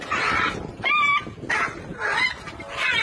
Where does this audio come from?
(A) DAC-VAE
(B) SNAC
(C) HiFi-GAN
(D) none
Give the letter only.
D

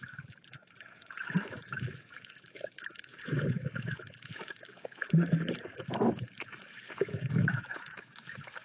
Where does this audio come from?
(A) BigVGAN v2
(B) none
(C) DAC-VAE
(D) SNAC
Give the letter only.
C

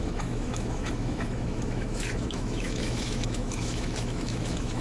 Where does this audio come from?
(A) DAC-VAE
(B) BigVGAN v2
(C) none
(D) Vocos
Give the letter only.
A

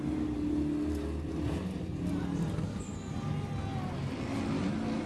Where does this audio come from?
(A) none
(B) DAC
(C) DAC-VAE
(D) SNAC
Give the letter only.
A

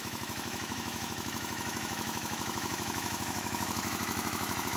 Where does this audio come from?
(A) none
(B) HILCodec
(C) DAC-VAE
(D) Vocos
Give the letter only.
C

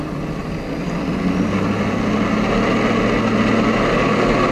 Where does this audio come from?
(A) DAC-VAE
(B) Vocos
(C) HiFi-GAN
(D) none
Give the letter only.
D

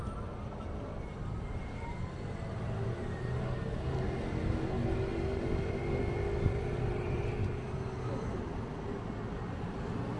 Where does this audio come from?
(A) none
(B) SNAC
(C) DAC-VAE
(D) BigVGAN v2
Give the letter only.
A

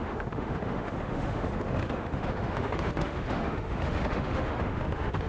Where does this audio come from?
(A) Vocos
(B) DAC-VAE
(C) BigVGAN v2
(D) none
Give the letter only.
B